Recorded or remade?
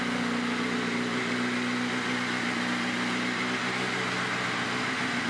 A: recorded